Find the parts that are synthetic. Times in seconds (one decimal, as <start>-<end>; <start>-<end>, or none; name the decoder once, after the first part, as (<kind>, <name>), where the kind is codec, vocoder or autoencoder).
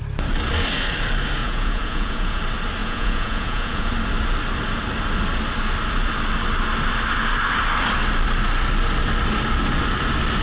1.4-2.4 (vocoder, Vocos); 2.8-3.9